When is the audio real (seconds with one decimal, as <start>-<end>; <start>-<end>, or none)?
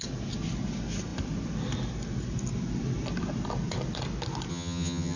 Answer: 0.0-4.5